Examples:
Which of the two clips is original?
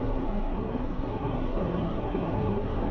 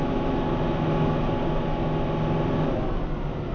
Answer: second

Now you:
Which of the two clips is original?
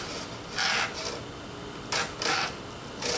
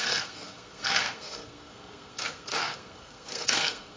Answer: first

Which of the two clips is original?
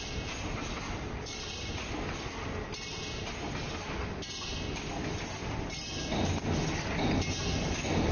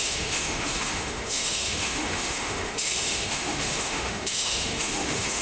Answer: first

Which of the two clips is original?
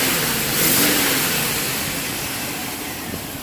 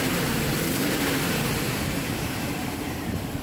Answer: first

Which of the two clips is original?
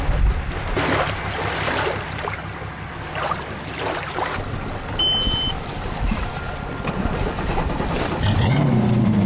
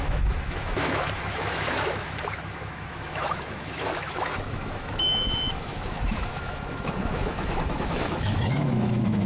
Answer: first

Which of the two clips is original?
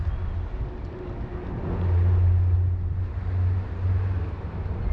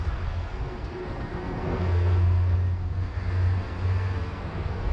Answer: first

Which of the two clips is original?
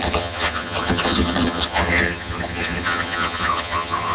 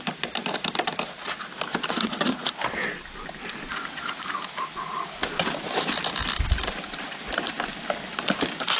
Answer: second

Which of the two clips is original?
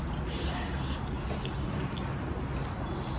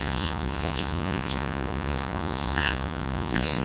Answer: first